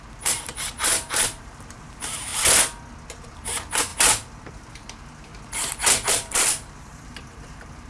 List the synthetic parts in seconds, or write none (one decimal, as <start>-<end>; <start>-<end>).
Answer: 0.0-2.3; 3.1-3.9; 4.5-5.3; 6.1-7.9